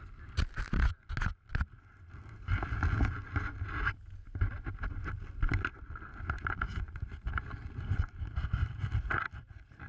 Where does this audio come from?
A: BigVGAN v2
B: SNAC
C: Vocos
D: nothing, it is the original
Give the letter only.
D